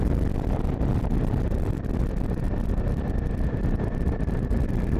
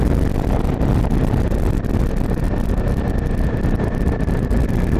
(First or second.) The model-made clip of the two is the first